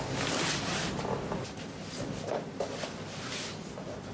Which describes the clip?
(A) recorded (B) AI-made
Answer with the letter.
A